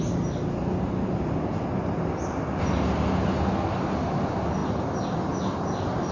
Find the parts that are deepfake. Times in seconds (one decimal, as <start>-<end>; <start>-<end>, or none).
none